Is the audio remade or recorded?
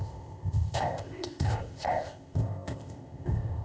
remade